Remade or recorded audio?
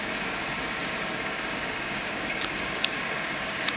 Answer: remade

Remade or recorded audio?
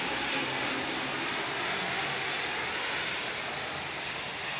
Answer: recorded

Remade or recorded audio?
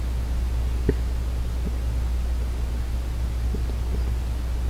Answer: recorded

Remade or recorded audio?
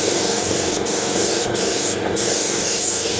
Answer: remade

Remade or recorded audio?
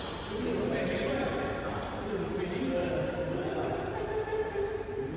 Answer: recorded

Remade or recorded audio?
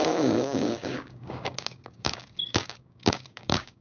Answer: remade